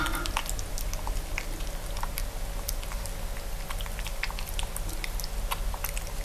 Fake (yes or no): no